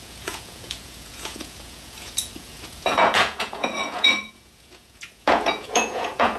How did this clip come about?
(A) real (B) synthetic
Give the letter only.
B